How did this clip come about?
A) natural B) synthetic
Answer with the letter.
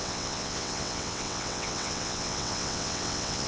B